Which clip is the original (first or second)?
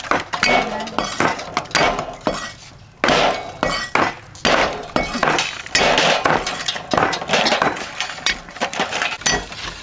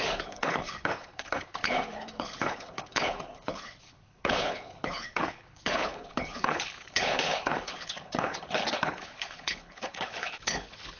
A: first